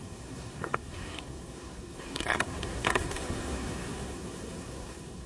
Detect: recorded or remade remade